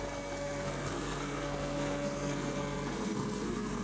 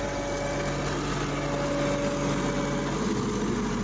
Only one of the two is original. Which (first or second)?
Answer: second